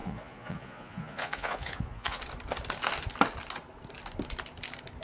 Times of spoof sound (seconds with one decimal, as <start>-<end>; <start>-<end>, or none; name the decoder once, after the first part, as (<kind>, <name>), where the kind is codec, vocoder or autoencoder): 0.0-2.2 (vocoder, Vocos)